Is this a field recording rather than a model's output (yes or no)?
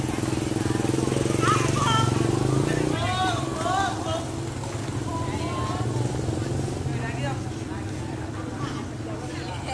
yes